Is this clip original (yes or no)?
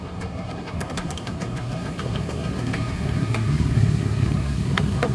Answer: no